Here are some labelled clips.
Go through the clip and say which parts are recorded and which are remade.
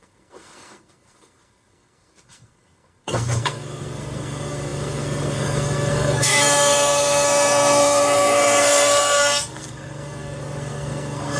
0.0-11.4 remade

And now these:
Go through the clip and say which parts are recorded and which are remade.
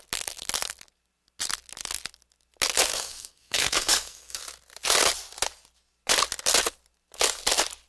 0.0-2.9 recorded; 2.9-4.4 remade; 4.4-7.9 recorded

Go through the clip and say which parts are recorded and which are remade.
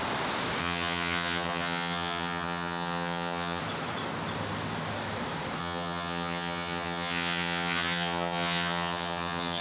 0.0-0.6 recorded; 0.6-3.6 remade; 3.6-5.6 recorded; 5.6-9.6 remade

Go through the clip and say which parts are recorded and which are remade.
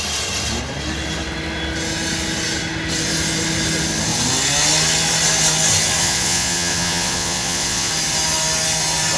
0.0-6.0 recorded; 6.0-7.9 remade; 7.9-9.2 recorded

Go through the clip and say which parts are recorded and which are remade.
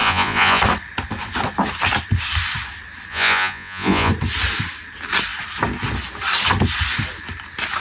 0.0-0.6 remade; 0.6-3.1 recorded; 3.1-4.1 remade; 4.1-7.8 recorded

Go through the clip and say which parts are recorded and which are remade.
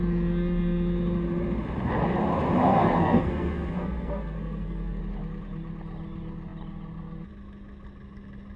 0.0-2.7 recorded; 2.7-5.0 remade; 5.0-8.6 recorded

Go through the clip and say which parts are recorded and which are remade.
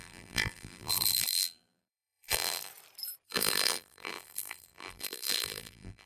0.0-2.7 remade; 2.7-3.3 recorded; 3.3-6.1 remade